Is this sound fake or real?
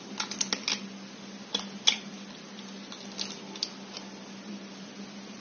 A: real